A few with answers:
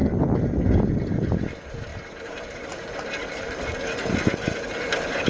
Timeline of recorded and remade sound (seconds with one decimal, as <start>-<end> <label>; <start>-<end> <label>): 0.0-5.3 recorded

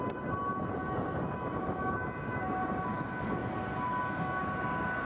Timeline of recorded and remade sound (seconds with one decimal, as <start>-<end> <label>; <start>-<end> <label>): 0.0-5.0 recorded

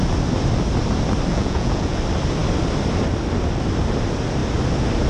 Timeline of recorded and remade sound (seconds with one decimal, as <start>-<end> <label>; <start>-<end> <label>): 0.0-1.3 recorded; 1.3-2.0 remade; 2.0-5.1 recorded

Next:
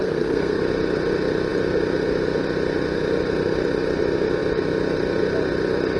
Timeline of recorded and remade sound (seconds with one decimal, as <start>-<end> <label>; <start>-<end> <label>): 0.0-0.6 remade; 0.6-6.0 recorded

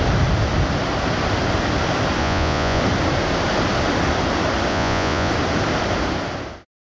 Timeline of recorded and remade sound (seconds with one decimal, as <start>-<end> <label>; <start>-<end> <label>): 0.0-2.2 recorded; 2.2-2.8 remade; 2.8-4.7 recorded; 4.7-5.3 remade; 5.3-6.8 recorded

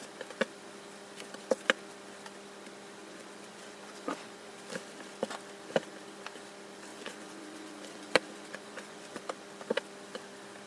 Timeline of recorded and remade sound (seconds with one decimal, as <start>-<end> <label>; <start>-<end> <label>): 0.0-3.0 recorded; 3.0-4.5 remade; 4.5-6.9 recorded; 6.9-9.2 remade; 9.2-10.7 recorded